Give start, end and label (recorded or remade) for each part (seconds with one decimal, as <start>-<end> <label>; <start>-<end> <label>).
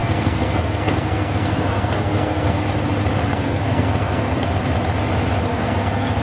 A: 0.0-2.6 remade; 2.6-3.3 recorded; 3.3-4.5 remade; 4.5-5.5 recorded; 5.5-6.2 remade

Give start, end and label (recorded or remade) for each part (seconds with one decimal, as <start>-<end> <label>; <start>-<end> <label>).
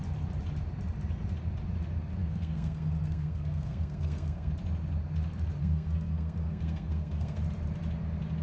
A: 0.0-2.2 recorded; 2.2-4.5 remade; 4.5-5.6 recorded; 5.6-7.4 remade; 7.4-8.4 recorded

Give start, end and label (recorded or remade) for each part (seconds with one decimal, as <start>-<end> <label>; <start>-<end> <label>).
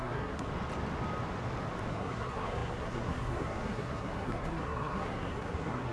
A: 0.0-0.5 remade; 0.5-1.9 recorded; 1.9-5.9 remade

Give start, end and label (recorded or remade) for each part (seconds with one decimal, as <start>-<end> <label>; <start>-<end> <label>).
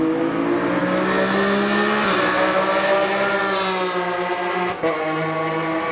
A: 0.0-5.9 recorded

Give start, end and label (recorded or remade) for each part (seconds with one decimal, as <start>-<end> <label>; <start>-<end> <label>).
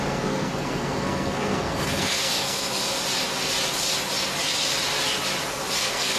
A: 0.0-2.8 remade; 2.8-5.8 recorded; 5.8-6.2 remade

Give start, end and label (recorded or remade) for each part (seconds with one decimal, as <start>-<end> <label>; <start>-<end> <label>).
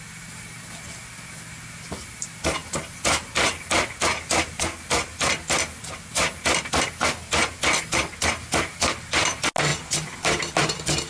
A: 0.0-11.1 recorded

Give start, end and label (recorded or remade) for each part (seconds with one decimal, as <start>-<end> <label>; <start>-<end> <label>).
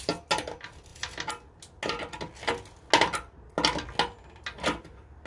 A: 0.0-5.3 recorded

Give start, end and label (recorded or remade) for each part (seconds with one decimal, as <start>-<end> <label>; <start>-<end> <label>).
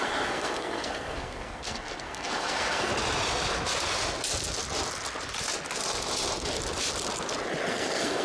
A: 0.0-2.9 remade; 2.9-7.7 recorded; 7.7-8.2 remade